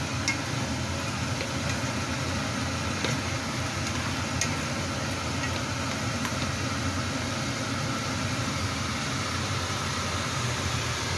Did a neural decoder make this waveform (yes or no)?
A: no